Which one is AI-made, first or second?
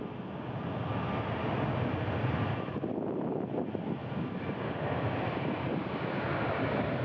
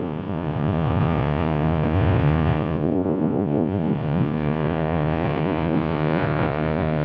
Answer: second